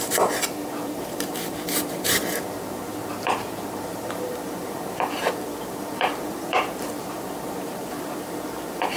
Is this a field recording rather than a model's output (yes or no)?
no